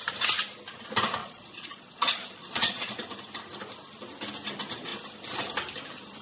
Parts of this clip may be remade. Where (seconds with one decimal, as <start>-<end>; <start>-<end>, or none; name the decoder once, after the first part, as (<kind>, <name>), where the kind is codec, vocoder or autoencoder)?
1.2-2.9 (vocoder, Vocos)